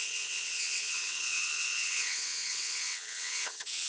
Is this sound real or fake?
fake